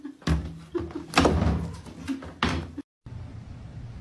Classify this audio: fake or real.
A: real